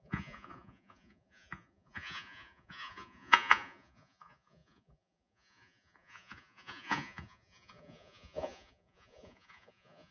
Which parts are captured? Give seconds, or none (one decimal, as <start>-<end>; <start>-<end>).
none

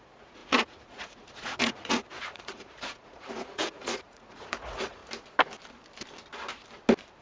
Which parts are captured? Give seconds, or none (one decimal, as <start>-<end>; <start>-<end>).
5.0-7.2

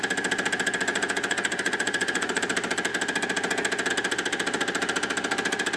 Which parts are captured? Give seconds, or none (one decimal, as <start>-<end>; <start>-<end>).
0.0-0.9; 2.4-5.8

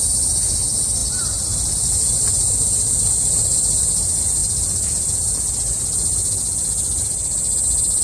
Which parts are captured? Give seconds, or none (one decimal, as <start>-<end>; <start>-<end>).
0.0-8.0

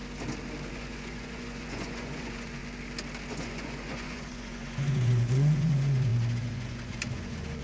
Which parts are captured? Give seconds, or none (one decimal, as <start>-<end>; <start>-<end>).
0.0-0.7; 2.6-3.3

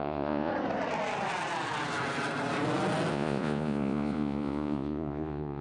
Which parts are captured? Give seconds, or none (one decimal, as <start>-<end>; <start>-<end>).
0.5-3.1

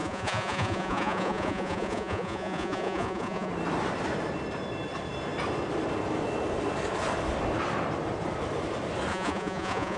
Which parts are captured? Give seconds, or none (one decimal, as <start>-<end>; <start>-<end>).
3.5-9.1